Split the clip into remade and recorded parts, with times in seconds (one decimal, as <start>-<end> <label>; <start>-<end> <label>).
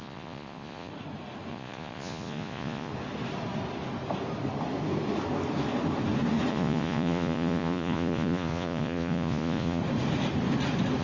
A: 0.0-0.9 remade; 0.9-1.5 recorded; 1.5-2.9 remade; 2.9-6.5 recorded; 6.5-9.8 remade; 9.8-11.0 recorded